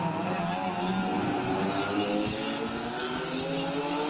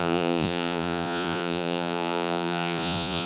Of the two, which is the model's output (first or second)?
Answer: second